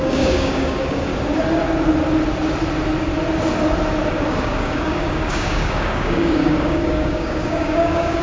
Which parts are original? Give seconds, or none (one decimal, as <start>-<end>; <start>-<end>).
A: 1.1-4.1